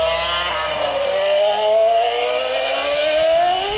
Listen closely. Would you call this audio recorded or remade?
recorded